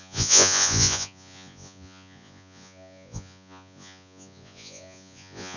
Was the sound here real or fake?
fake